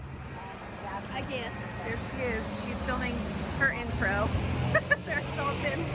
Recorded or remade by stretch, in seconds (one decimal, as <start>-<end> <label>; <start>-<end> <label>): 0.0-5.9 recorded